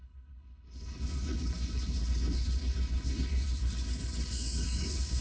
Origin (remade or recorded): remade